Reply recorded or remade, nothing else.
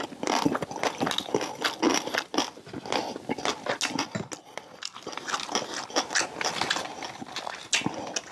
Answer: recorded